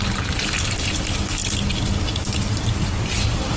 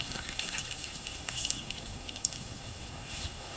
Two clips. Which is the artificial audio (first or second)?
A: second